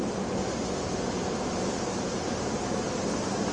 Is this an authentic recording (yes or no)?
yes